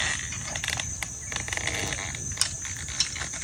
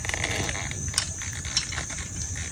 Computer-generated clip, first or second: second